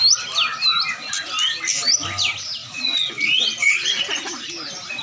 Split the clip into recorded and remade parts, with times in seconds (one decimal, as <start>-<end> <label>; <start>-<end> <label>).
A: 0.0-2.6 recorded; 2.6-4.5 remade; 4.5-5.0 recorded

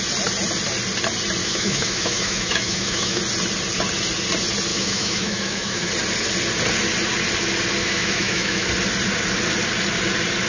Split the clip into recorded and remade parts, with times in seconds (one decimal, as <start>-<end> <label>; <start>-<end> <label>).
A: 0.0-1.4 recorded; 1.4-3.2 remade; 3.2-4.7 recorded; 4.7-5.9 remade; 5.9-7.8 recorded; 7.8-8.7 remade; 8.7-10.5 recorded

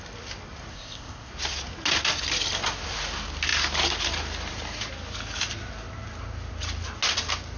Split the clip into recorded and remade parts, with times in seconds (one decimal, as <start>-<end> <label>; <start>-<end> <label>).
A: 0.0-0.7 recorded; 0.7-1.3 remade; 1.3-7.6 recorded

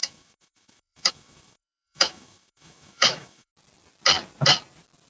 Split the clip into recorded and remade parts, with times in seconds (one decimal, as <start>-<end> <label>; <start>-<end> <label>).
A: 0.0-3.5 remade; 3.5-5.1 recorded

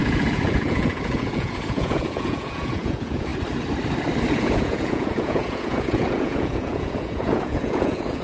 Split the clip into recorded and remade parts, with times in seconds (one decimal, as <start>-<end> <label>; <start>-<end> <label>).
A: 0.0-3.3 remade; 3.3-4.3 recorded; 4.3-8.2 remade